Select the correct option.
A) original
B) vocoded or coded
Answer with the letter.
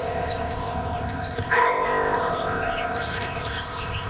B